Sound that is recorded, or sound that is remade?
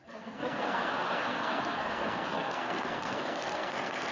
remade